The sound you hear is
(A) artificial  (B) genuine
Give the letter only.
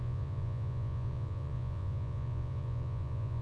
A